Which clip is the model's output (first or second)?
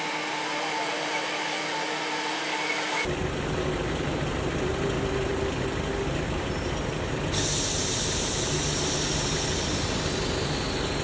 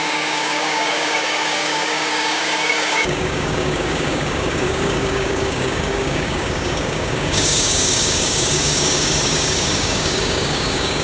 second